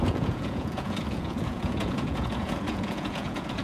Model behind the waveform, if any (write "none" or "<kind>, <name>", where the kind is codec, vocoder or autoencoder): vocoder, Vocos